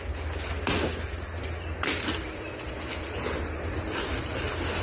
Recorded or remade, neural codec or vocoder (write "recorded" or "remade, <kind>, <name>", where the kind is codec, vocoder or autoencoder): recorded